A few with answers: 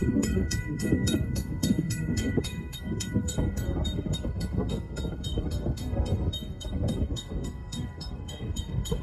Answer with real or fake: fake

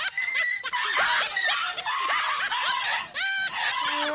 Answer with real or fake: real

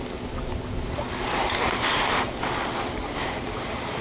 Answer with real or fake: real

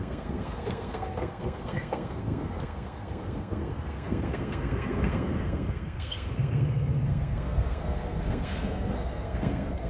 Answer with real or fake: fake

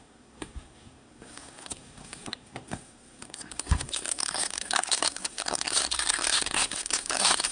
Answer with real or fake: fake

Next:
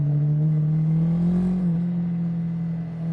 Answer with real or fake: real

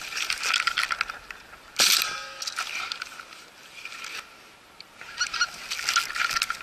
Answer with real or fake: real